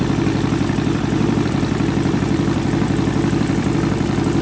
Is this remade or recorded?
remade